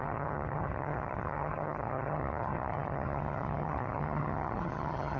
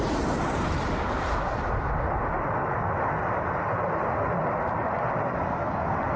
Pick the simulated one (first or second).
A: first